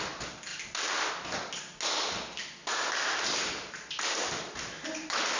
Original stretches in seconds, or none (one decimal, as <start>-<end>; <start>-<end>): 0.0-5.4